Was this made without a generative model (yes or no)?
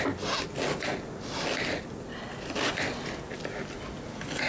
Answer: yes